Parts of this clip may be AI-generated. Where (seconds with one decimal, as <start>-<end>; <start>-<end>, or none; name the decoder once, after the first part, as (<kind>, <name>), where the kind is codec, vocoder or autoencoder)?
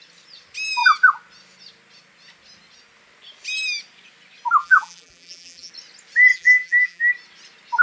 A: 4.6-5.7 (vocoder, BigVGAN v2); 6.3-7.1